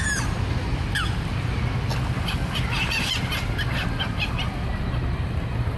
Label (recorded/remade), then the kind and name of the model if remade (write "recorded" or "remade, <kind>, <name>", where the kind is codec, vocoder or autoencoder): recorded